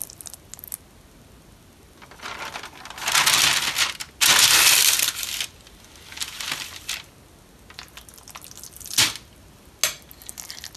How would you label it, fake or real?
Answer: real